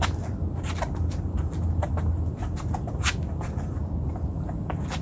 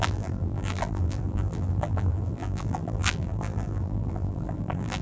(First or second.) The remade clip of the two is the second